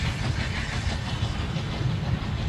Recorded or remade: recorded